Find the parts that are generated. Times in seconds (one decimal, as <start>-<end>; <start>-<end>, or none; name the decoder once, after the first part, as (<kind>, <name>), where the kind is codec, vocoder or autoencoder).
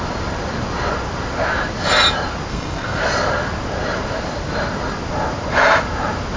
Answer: 2.5-3.0 (codec, SNAC)